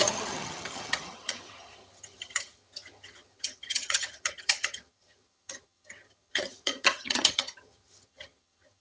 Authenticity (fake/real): fake